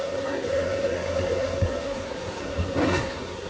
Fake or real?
fake